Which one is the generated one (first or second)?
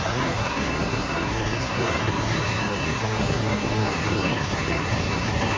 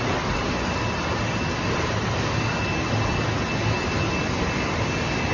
first